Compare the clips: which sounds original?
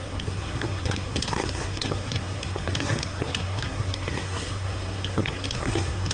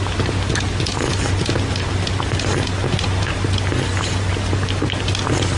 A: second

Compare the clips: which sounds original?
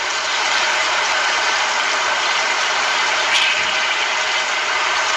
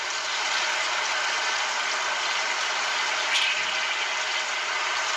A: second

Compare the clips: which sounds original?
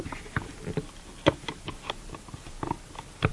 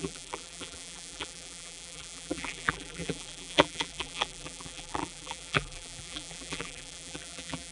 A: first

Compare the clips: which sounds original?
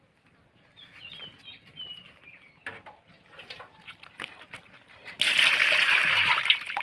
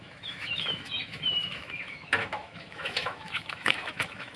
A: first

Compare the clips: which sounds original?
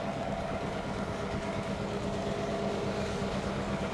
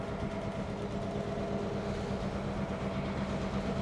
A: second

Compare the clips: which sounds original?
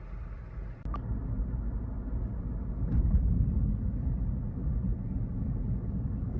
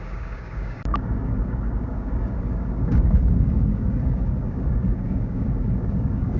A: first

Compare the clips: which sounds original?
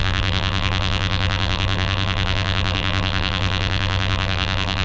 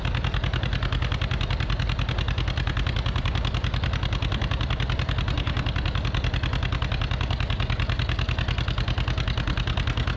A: second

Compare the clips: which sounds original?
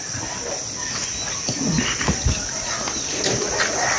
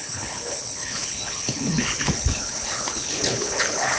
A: first